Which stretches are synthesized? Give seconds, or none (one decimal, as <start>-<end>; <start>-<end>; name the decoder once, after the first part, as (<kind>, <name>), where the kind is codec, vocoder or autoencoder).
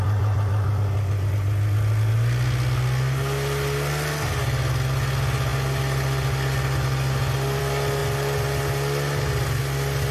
none